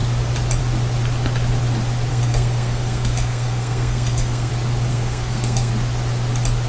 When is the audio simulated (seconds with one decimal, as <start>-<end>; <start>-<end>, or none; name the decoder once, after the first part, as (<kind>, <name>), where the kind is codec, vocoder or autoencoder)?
2.1-4.5 (codec, SNAC); 4.9-5.7